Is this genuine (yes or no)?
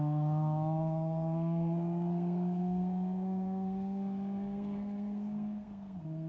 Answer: no